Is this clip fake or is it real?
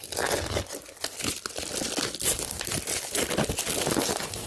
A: real